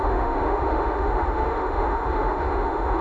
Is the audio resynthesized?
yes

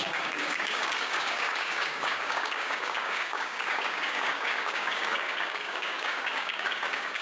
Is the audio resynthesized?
yes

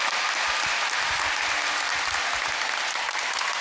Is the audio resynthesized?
no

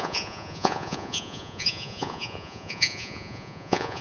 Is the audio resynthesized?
yes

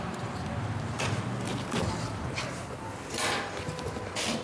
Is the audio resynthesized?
yes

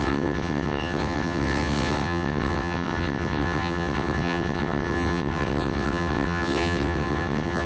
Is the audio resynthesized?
yes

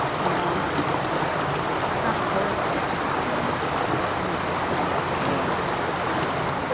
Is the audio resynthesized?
no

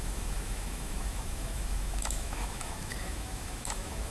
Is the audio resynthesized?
yes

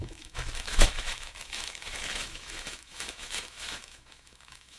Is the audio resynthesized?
yes